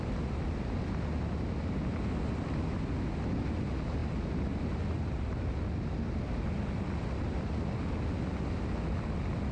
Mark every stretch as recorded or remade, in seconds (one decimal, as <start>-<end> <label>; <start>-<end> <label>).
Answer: 0.0-9.5 recorded